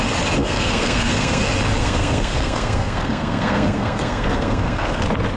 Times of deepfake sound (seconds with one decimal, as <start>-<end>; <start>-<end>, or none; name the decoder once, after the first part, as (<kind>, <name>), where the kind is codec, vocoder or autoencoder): 0.4-1.4 (codec, SNAC); 1.8-5.0